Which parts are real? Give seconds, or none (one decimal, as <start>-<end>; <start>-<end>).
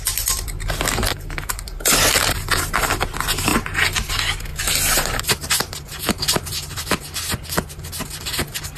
0.0-1.1; 2.8-3.5; 4.1-4.5; 5.8-8.8